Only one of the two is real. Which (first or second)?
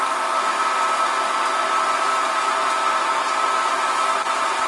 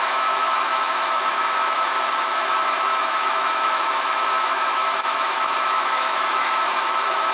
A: first